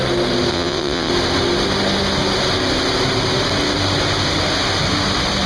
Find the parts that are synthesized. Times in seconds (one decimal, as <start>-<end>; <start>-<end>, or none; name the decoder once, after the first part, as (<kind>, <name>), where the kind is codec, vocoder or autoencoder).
0.5-1.1 (vocoder, WaveNeXt)